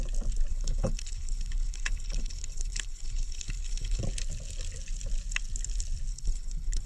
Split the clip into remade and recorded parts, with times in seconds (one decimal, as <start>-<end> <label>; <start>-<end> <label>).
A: 0.0-0.5 recorded; 0.5-4.0 remade; 4.0-6.1 recorded; 6.1-6.9 remade